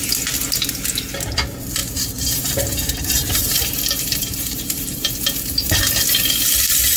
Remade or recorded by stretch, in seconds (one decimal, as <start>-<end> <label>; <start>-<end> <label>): 0.0-1.8 recorded; 1.8-5.8 remade; 5.8-7.0 recorded